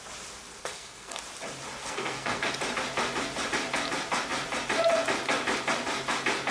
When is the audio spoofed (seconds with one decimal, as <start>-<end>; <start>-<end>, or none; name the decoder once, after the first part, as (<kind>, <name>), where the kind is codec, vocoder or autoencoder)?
0.6-1.2 (codec, SNAC); 1.8-2.5